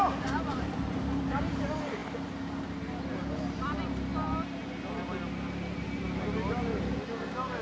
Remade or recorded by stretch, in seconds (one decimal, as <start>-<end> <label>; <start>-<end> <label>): 0.0-0.5 recorded; 0.5-1.4 remade; 1.4-7.6 recorded